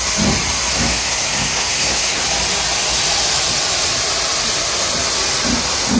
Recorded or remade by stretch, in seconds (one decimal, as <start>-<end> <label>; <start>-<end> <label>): 0.0-0.7 recorded; 0.7-2.2 remade; 2.2-6.0 recorded